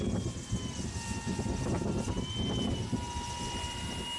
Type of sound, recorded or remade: recorded